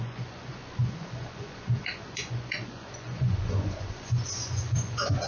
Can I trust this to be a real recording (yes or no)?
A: no